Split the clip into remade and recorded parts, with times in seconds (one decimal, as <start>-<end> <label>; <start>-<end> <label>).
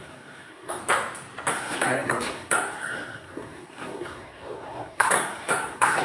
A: 0.0-0.8 remade; 0.8-1.5 recorded; 1.5-6.0 remade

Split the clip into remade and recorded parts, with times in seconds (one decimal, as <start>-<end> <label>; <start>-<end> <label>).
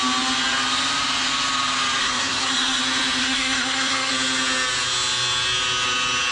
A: 0.0-2.0 recorded; 2.0-2.8 remade; 2.8-3.2 recorded; 3.2-4.1 remade; 4.1-6.3 recorded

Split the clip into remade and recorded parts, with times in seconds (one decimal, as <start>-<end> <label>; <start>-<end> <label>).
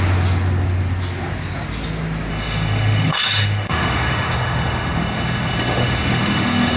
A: 0.0-2.3 recorded; 2.3-6.8 remade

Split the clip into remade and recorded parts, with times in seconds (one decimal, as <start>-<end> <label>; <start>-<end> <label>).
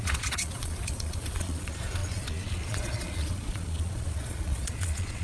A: 0.0-5.2 remade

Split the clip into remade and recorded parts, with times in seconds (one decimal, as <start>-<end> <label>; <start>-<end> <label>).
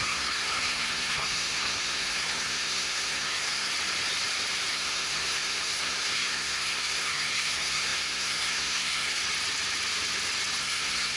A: 0.0-3.7 remade; 3.7-4.7 recorded; 4.7-9.2 remade; 9.2-10.6 recorded; 10.6-11.2 remade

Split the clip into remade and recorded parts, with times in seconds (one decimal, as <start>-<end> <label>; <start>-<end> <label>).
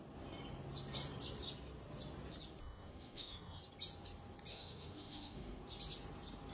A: 0.0-2.6 recorded; 2.6-3.6 remade; 3.6-4.5 recorded; 4.5-5.6 remade; 5.6-6.5 recorded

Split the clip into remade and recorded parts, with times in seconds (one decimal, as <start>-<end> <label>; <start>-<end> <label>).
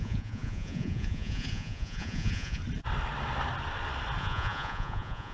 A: 0.0-2.6 remade; 2.6-4.2 recorded; 4.2-5.3 remade